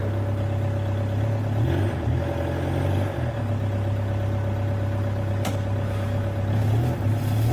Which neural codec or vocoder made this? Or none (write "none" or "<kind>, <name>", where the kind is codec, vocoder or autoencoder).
none